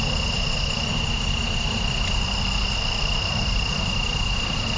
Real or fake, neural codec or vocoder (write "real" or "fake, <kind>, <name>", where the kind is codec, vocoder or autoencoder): real